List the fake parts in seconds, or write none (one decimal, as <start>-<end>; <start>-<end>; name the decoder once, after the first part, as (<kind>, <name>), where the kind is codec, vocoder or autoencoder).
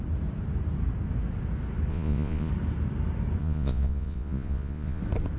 1.9-2.5 (vocoder, Vocos); 3.4-5.0